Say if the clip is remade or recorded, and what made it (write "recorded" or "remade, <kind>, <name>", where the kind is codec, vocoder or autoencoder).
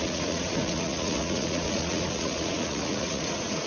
remade, vocoder, Vocos